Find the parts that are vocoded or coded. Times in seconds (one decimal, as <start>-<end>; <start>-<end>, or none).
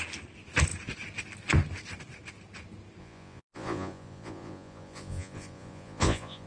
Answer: 3.0-6.5